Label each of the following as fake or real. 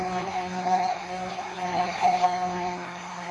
fake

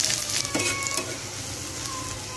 real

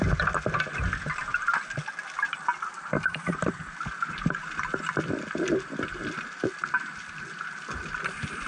real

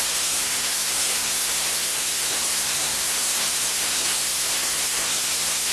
fake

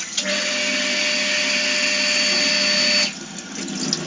real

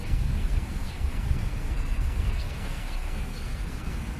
fake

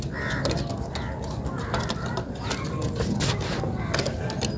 real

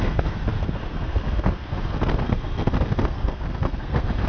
fake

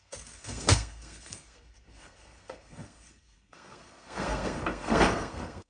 fake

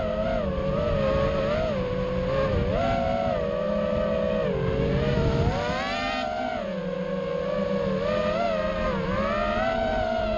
real